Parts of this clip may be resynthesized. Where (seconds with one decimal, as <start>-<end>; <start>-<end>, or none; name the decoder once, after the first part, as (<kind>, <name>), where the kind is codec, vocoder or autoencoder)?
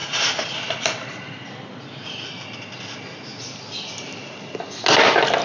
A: none